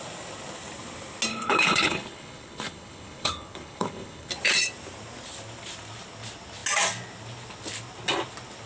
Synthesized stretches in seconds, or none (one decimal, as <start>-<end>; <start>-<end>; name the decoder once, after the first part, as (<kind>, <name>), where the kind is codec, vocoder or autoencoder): 1.3-4.3 (codec, HILCodec)